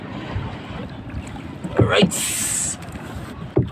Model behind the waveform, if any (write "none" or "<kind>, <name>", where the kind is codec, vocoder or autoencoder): none